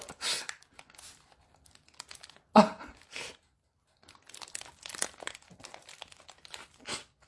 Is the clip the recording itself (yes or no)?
yes